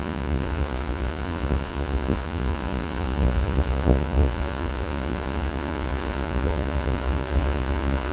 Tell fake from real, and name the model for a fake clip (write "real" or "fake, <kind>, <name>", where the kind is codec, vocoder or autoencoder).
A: fake, vocoder, Vocos